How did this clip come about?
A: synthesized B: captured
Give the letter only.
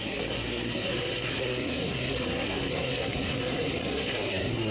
A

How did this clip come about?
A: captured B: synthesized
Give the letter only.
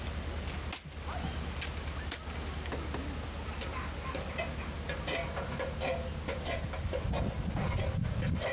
A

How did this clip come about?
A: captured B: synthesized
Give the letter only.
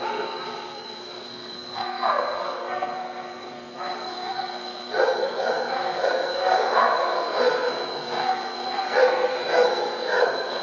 B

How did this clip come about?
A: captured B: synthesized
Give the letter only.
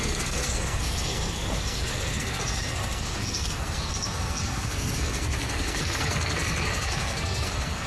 B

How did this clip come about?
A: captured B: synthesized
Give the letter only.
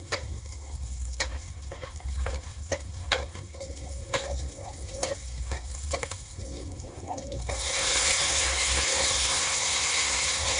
B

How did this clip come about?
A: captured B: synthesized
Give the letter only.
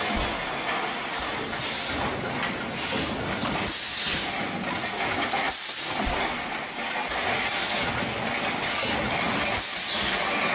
A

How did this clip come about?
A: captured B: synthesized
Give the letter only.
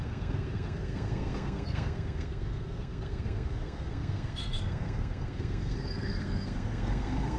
B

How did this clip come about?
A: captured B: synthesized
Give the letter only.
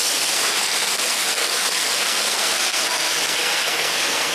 B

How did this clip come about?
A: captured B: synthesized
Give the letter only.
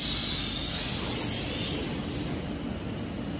A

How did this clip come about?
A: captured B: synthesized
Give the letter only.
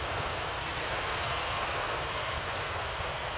B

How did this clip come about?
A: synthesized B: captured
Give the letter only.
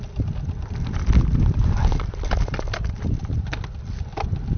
B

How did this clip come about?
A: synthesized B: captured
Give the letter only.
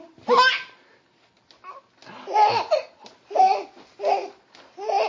B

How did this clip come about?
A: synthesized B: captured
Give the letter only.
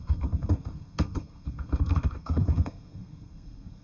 A